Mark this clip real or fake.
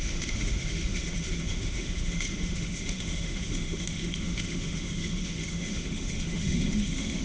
fake